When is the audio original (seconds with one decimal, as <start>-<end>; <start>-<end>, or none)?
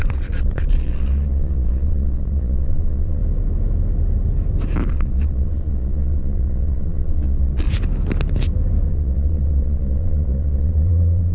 3.2-4.9; 7.7-8.9